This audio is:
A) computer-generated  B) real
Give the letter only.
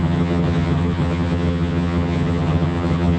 A